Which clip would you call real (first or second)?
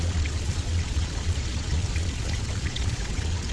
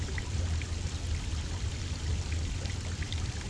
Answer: second